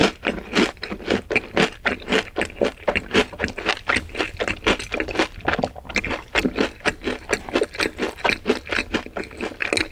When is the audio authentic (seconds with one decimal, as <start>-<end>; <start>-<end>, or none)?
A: 0.0-2.7; 3.5-9.9